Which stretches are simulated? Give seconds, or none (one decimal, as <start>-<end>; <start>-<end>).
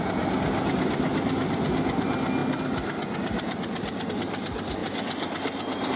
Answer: none